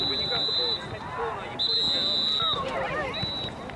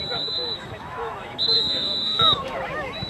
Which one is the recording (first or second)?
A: first